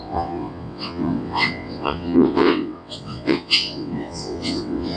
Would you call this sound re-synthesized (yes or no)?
yes